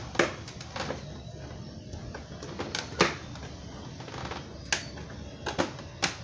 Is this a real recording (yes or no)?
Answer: yes